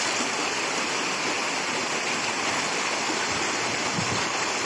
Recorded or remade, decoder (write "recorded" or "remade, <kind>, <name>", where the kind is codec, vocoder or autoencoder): recorded